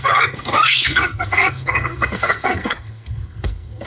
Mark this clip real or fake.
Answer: fake